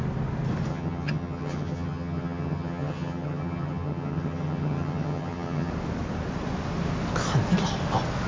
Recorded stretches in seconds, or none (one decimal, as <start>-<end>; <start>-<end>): 0.0-0.7; 5.7-8.3